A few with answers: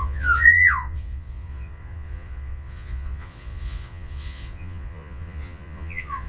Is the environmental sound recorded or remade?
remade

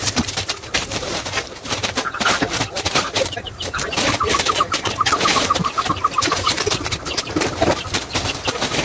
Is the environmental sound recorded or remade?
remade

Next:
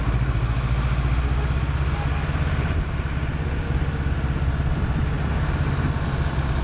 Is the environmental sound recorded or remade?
recorded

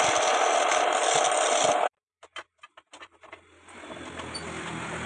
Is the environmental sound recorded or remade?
recorded